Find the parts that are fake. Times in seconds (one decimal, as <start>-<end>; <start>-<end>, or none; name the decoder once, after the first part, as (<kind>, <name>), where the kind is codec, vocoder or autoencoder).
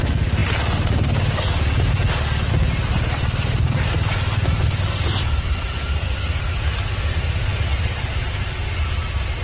2.9-6.4 (vocoder, BigVGAN v2)